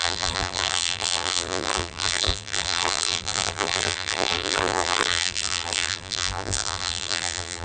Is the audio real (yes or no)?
no